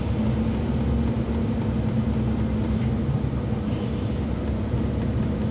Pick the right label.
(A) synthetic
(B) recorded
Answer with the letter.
B